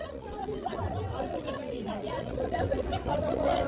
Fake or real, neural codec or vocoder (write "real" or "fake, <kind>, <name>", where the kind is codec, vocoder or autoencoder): fake, vocoder, WaveNeXt